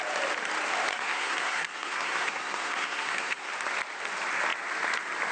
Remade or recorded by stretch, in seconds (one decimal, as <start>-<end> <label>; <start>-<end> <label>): 0.0-0.9 recorded; 0.9-3.5 remade; 3.5-5.3 recorded